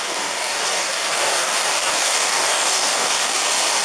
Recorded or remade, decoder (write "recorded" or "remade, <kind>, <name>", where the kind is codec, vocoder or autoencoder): remade, codec, DAC